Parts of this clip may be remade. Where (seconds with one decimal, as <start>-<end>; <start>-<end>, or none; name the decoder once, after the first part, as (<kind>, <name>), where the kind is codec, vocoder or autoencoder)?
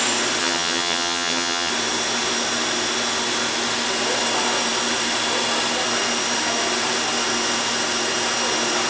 0.4-1.7 (vocoder, HiFi-GAN)